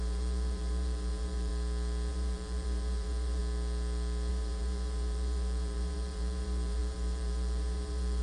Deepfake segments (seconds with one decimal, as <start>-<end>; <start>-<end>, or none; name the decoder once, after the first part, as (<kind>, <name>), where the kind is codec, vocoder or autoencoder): 0.0-1.5 (vocoder, BigVGAN v2); 2.1-3.4; 4.3-8.2

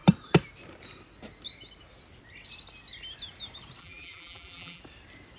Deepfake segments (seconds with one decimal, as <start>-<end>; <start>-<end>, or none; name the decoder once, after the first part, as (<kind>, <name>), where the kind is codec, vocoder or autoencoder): 3.8-4.8 (vocoder, BigVGAN v2)

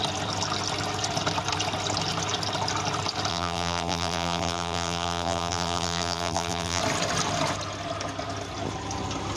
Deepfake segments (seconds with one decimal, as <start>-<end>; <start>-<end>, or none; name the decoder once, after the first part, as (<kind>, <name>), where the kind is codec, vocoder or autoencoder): 3.3-6.8 (vocoder, BigVGAN v2)

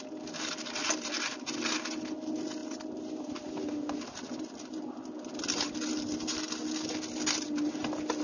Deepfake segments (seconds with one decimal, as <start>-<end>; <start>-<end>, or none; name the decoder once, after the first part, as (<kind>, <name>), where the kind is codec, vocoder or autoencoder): none

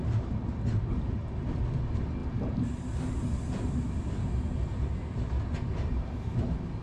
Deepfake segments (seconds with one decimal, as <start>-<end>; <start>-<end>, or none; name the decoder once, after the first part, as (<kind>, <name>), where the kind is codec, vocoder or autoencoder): none

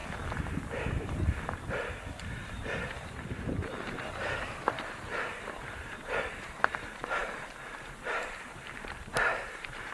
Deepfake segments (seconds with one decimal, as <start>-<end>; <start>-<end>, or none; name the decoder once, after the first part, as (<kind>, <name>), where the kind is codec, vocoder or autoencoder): 1.5-9.9 (vocoder, BigVGAN v2)

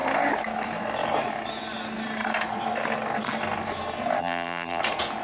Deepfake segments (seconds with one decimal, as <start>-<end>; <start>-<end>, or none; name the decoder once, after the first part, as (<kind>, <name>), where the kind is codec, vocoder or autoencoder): 4.2-4.8 (vocoder, BigVGAN v2)

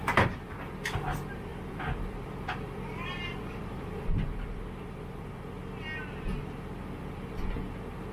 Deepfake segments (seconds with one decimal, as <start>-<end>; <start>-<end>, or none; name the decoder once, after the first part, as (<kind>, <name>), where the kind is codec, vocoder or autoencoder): 1.5-5.3 (vocoder, BigVGAN v2)